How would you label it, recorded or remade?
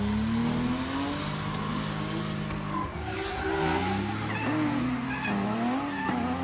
recorded